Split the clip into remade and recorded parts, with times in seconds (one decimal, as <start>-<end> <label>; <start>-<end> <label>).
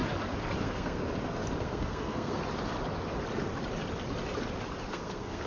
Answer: 0.0-0.6 recorded; 0.6-1.0 remade; 1.0-1.6 recorded; 1.6-2.4 remade; 2.4-4.9 recorded; 4.9-5.5 remade